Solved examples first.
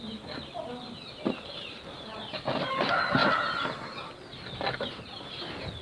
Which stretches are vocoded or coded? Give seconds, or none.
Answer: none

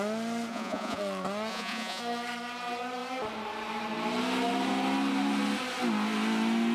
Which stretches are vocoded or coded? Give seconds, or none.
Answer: 0.5-1.0; 1.5-2.0

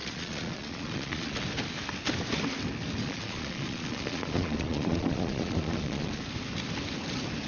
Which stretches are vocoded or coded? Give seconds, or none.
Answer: 0.0-1.4; 3.0-6.2

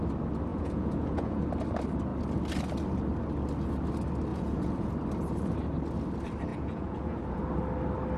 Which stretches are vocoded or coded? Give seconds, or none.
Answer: 0.5-1.5; 4.3-4.9; 6.5-7.4

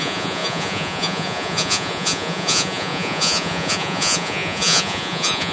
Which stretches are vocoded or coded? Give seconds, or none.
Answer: 0.0-5.5

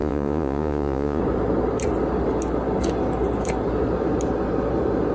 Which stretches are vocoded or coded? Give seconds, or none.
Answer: 0.0-1.2